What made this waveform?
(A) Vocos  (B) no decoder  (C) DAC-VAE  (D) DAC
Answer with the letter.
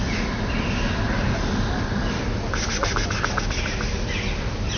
B